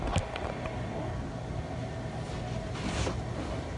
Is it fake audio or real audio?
real